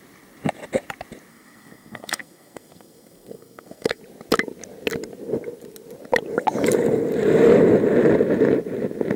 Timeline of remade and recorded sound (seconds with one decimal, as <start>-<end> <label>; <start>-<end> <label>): 0.0-1.3 recorded; 1.3-4.0 remade; 4.0-9.2 recorded